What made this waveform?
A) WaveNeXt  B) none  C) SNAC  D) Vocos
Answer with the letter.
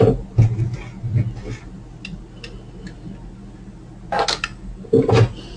B